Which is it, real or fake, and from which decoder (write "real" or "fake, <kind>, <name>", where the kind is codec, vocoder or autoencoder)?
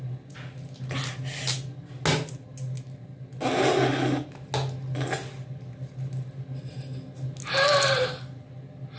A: real